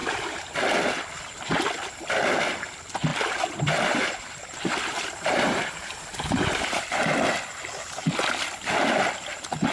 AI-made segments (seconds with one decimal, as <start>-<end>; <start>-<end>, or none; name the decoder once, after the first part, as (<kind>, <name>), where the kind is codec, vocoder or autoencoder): 0.0-0.5 (vocoder, BigVGAN v2); 3.1-7.0